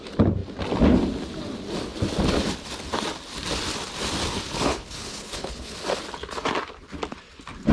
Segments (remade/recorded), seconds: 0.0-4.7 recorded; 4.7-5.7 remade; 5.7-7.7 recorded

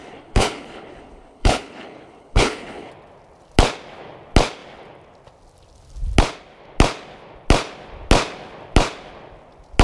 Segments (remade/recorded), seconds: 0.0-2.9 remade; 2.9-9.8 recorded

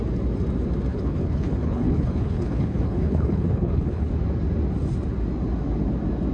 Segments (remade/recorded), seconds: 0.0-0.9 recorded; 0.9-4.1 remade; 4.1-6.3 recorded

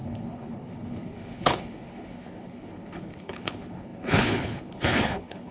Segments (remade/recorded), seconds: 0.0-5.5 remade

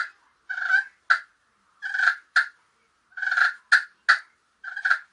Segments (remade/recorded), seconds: 0.0-5.1 recorded